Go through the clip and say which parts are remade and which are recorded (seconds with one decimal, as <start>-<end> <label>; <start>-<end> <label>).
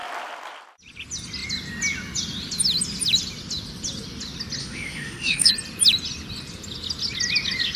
0.0-4.6 recorded; 4.6-5.5 remade; 5.5-7.8 recorded